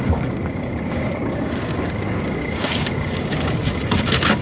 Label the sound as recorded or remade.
remade